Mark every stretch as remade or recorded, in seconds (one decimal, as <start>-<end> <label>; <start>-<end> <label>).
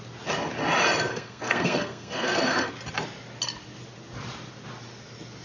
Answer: 0.0-1.1 recorded; 1.1-2.7 remade; 2.7-5.4 recorded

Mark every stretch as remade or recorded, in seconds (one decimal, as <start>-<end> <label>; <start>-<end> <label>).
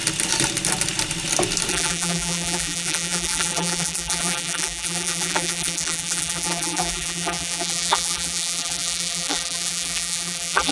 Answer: 0.0-1.7 recorded; 1.7-10.7 remade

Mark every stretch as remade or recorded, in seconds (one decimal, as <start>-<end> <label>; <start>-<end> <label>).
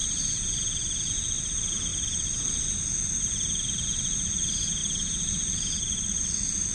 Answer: 0.0-1.1 remade; 1.1-1.9 recorded; 1.9-2.6 remade; 2.6-6.7 recorded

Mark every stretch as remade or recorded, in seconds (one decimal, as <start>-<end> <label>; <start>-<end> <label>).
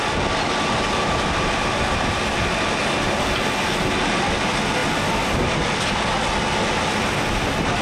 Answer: 0.0-7.8 recorded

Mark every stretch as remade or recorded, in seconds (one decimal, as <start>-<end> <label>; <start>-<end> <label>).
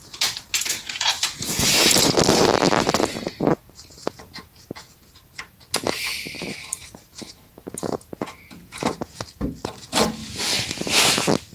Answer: 0.0-0.5 recorded; 0.5-2.2 remade; 2.2-3.9 recorded; 3.9-5.1 remade; 5.1-6.8 recorded; 6.8-9.2 remade; 9.2-11.5 recorded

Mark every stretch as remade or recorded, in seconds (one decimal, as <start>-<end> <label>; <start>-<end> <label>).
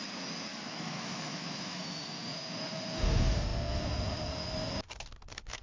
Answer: 0.0-0.5 recorded; 0.5-1.8 remade; 1.8-5.6 recorded